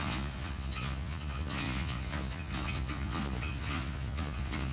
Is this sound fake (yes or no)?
yes